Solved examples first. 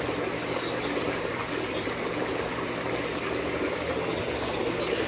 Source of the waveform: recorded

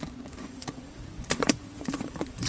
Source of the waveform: remade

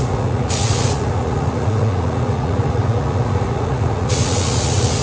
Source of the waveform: remade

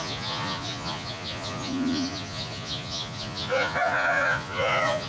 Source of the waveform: remade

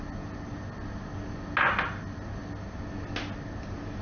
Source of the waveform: recorded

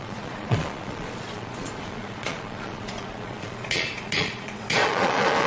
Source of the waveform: remade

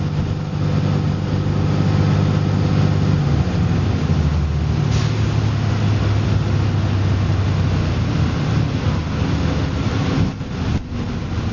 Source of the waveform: recorded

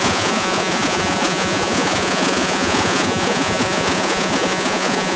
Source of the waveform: remade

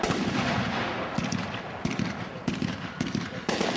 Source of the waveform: recorded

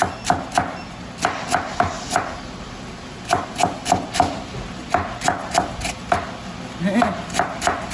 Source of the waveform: recorded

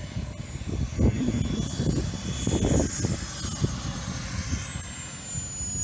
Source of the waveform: recorded